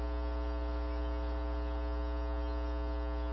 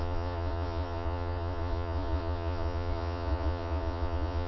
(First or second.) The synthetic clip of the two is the second